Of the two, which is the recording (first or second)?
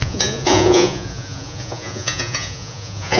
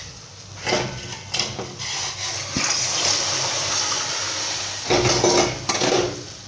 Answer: second